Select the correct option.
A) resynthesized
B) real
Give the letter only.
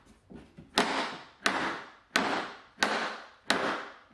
B